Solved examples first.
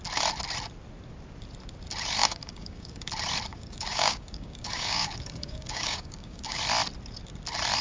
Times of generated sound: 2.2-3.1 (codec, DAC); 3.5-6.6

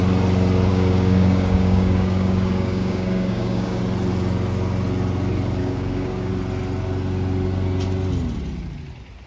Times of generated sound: 0.7-3.8 (codec, DAC); 5.6-6.3

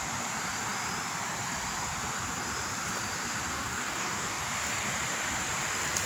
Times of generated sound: 3.5-4.4 (codec, DAC)

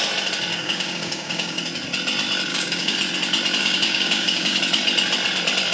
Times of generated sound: 0.5-1.6 (codec, DAC); 2.5-3.0; 3.6-4.6

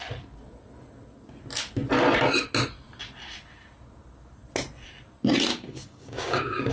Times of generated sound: 5.5-6.7 (codec, DAC)

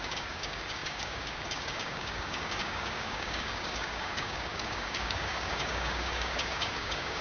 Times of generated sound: 0.0-7.2 (codec, DAC)

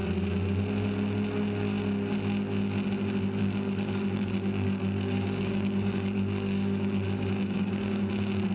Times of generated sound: 3.4-8.1 (codec, DAC)